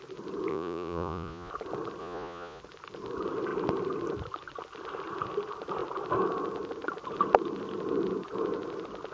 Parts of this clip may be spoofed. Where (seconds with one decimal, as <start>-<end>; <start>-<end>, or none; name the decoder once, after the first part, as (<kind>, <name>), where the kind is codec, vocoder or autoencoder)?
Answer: 0.5-1.5 (vocoder, Vocos); 2.0-2.6